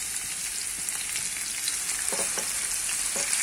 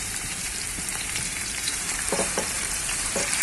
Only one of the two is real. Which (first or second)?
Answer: first